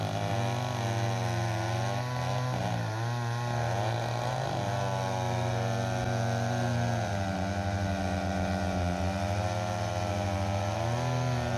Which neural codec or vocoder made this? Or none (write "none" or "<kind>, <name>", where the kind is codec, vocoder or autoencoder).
none